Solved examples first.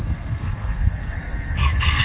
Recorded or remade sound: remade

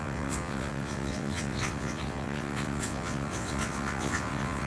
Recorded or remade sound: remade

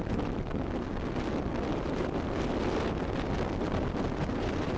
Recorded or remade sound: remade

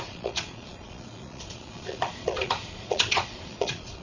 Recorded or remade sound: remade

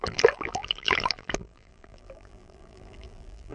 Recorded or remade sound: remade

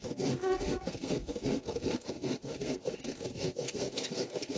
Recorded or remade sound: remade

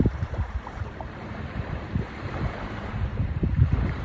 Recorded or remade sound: remade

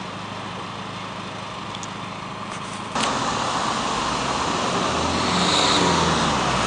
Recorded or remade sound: recorded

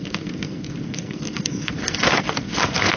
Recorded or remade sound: remade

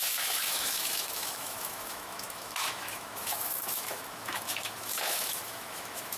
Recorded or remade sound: remade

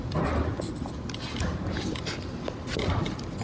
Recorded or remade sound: recorded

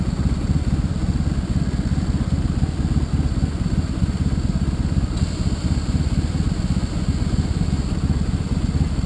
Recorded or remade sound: recorded